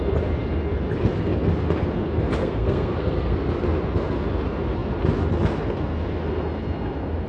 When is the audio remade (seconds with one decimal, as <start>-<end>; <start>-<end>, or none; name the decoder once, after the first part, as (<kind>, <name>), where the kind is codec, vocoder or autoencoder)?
2.4-3.5 (codec, SNAC)